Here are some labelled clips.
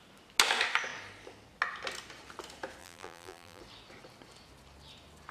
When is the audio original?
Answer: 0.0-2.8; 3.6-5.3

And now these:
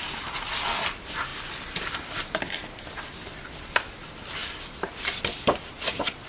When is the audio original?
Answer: 0.0-6.3

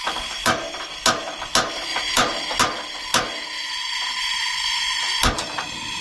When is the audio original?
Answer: 0.0-1.9; 2.6-6.0

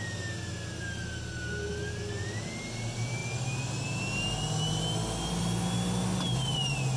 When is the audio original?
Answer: 0.0-7.0

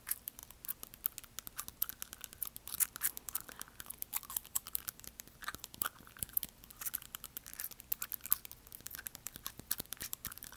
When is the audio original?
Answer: 0.4-2.7; 7.5-8.9

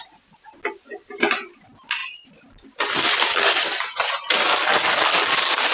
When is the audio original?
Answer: 0.0-5.7